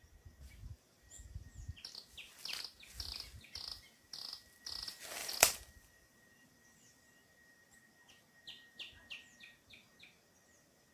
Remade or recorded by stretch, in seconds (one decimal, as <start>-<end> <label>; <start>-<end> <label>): 0.0-5.2 recorded; 5.2-7.0 remade; 7.0-10.9 recorded